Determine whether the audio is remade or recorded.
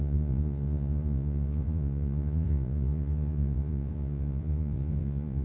remade